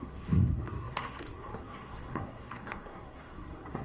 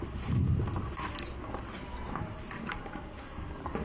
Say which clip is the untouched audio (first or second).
second